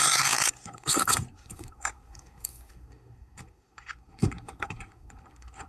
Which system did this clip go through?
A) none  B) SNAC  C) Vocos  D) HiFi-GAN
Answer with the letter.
B